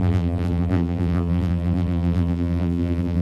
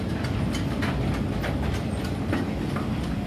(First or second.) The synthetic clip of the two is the first